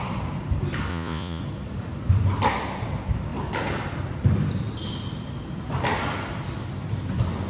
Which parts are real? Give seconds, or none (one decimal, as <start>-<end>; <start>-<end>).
0.0-0.9; 1.4-7.5

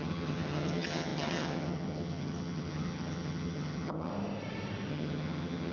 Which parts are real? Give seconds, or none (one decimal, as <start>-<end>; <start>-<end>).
4.1-4.9

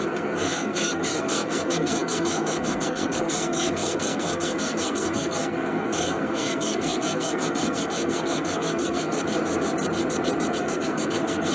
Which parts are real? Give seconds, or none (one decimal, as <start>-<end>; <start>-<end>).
9.2-10.6

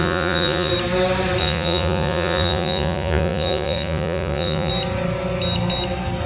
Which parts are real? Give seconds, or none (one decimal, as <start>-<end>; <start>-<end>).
0.7-1.4; 4.7-6.3

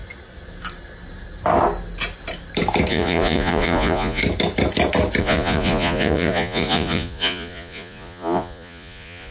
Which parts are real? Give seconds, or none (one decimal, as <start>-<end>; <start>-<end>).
0.0-2.9; 4.2-5.2